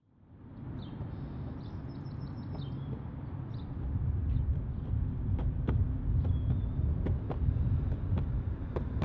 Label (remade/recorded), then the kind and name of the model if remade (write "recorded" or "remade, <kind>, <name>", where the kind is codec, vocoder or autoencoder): recorded